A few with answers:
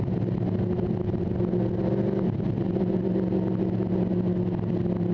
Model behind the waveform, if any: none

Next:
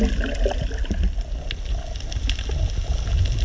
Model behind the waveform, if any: none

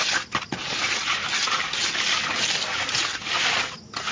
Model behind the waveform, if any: none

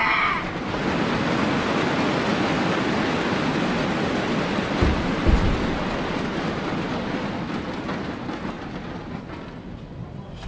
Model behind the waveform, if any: none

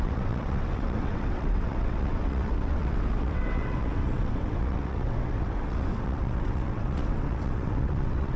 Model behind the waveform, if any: vocoder, WaveNeXt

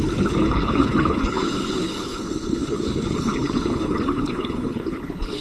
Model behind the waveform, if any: codec, HILCodec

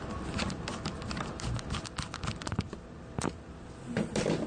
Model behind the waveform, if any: none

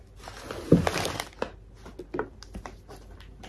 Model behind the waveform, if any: none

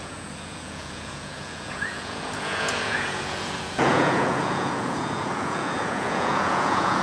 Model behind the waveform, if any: vocoder, Vocos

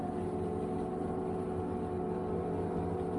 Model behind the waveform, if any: none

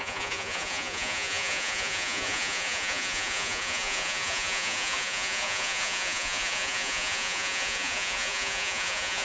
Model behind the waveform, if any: vocoder, Vocos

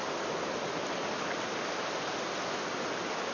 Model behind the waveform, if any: none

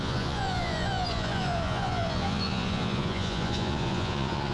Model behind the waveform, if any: vocoder, Vocos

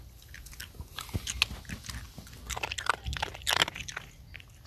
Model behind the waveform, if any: none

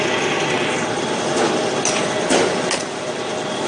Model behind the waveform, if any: none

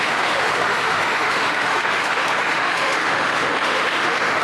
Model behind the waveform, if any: autoencoder, DAC-VAE